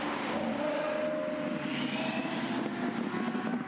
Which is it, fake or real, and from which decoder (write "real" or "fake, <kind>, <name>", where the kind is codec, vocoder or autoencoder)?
real